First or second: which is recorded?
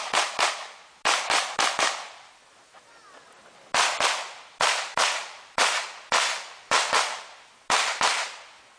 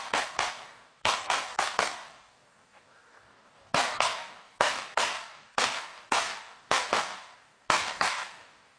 first